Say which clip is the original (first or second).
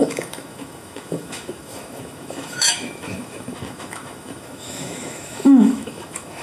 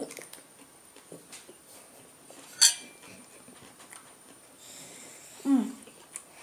second